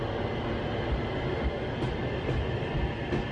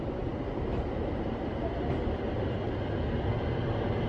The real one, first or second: first